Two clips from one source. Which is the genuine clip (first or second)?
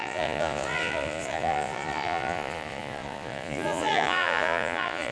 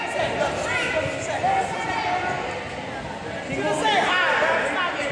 second